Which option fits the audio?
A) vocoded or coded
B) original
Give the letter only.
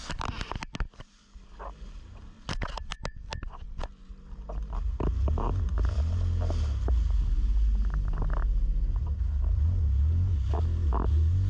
B